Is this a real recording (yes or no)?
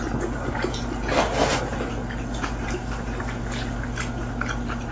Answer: yes